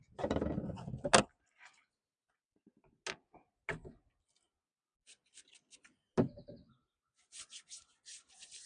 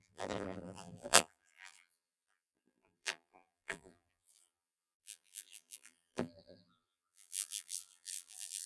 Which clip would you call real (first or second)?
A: first